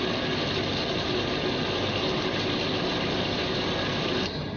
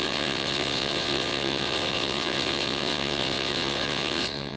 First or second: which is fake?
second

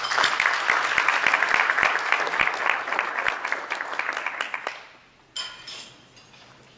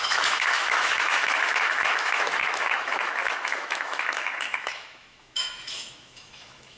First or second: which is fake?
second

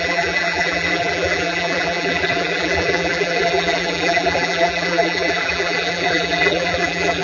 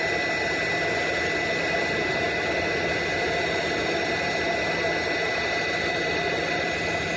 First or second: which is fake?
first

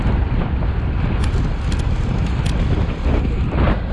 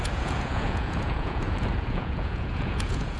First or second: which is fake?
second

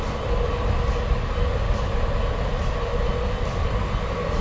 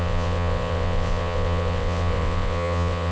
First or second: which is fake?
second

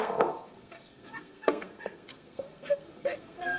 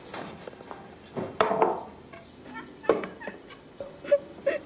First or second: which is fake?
first